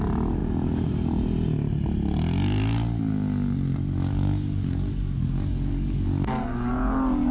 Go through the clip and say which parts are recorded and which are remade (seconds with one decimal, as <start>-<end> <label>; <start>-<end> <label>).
0.0-4.1 recorded; 4.1-6.7 remade; 6.7-7.3 recorded